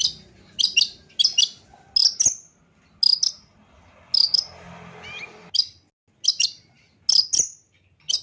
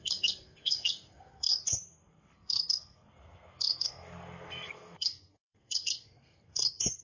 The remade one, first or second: second